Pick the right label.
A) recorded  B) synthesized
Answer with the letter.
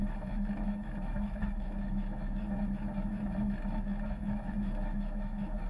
B